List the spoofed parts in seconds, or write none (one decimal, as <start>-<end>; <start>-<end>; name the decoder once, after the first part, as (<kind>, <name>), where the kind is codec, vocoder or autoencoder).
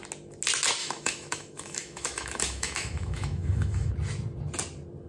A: 0.8-3.9 (autoencoder, DAC-VAE)